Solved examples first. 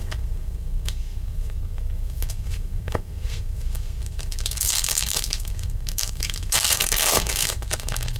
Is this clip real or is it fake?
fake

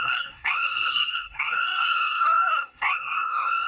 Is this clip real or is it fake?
fake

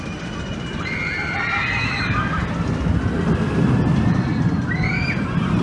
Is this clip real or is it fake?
real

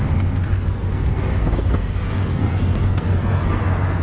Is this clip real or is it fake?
fake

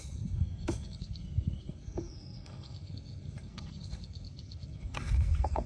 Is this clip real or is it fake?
fake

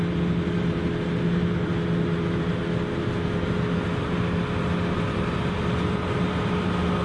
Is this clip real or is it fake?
real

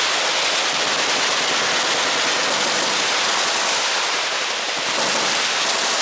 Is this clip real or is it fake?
real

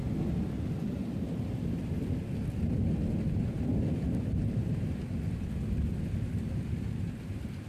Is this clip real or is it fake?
real